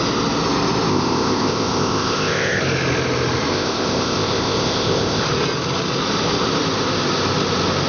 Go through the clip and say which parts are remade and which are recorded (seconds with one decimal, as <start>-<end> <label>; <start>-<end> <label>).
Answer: 0.0-0.9 recorded; 0.9-2.6 remade; 2.6-3.5 recorded; 3.5-5.2 remade; 5.2-7.9 recorded